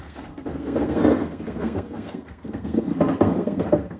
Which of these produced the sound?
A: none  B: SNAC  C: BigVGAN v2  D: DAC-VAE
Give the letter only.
B